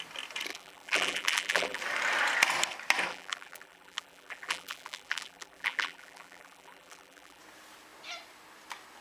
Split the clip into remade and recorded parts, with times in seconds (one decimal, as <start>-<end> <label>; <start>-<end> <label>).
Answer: 0.0-0.5 recorded; 0.5-1.8 remade; 1.8-3.1 recorded; 3.1-7.4 remade; 7.4-9.0 recorded